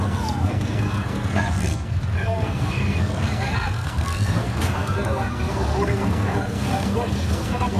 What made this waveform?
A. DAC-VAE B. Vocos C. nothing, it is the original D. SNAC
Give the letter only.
D